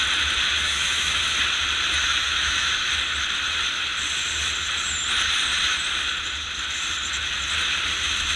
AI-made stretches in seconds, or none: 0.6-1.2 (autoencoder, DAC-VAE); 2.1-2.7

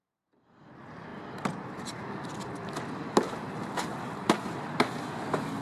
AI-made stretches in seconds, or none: none

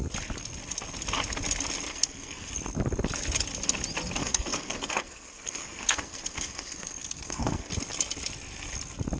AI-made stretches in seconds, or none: 1.9-2.5 (codec, SNAC); 4.2-7.7

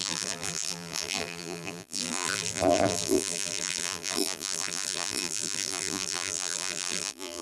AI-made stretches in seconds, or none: 0.0-7.4 (vocoder, BigVGAN v2)

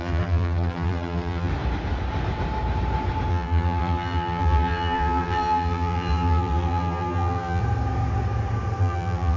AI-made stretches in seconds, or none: 0.0-1.5 (vocoder, BigVGAN v2); 3.3-7.6; 8.8-9.4

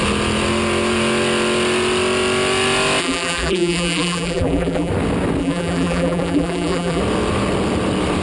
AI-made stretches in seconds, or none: 3.0-4.9 (vocoder, BigVGAN v2); 5.4-7.0

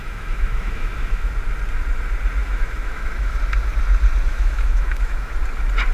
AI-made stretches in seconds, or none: 0.0-1.3 (autoencoder, DAC-VAE); 2.4-3.4; 4.3-5.3